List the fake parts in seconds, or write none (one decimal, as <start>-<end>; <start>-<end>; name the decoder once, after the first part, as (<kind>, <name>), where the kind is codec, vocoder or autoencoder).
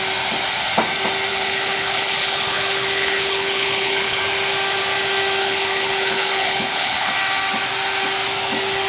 1.3-4.2 (codec, HILCodec); 5.4-7.1